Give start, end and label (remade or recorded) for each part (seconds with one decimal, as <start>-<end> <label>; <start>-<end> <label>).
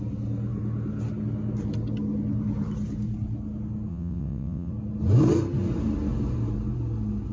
0.0-3.9 recorded; 3.9-4.7 remade; 4.7-7.3 recorded